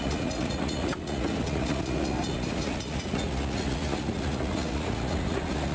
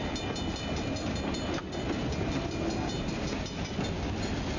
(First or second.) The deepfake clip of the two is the first